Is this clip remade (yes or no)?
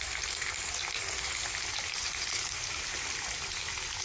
no